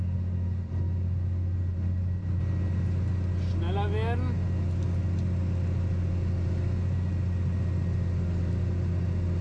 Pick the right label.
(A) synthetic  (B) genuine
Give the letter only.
B